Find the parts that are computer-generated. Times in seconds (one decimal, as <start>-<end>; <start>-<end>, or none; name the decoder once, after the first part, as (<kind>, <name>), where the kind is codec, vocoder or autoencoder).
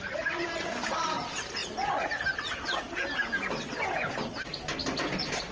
none